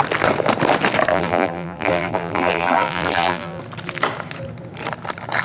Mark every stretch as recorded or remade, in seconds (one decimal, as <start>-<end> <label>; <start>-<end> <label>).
0.0-1.1 recorded; 1.1-3.6 remade; 3.6-5.4 recorded